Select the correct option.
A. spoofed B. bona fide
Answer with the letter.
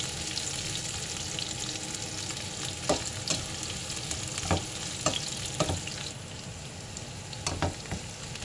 B